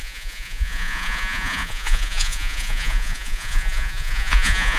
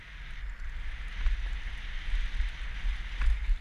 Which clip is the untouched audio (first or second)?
second